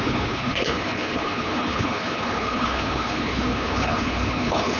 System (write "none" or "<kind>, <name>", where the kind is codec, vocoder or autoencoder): codec, HILCodec